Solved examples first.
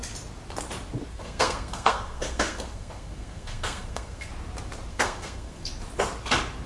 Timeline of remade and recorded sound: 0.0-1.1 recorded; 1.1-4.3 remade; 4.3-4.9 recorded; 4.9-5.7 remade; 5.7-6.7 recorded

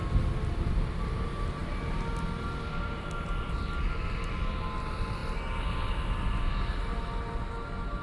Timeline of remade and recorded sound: 0.0-8.0 recorded

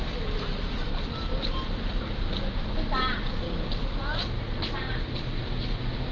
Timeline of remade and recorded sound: 0.0-1.3 remade; 1.3-1.9 recorded; 1.9-6.1 remade